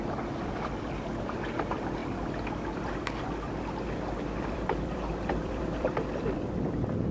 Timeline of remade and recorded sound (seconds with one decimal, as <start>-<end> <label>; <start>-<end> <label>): 0.0-2.0 remade; 2.0-4.4 recorded; 4.4-7.1 remade